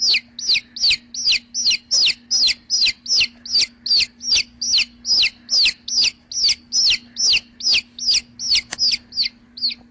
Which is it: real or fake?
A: real